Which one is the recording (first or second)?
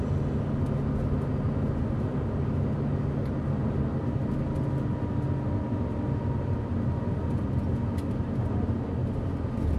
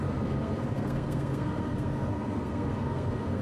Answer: first